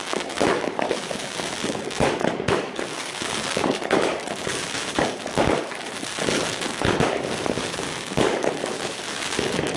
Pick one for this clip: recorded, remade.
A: remade